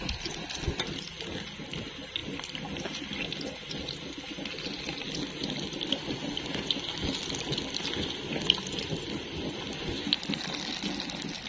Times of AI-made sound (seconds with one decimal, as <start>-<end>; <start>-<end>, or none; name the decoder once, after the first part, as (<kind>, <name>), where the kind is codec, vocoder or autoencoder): none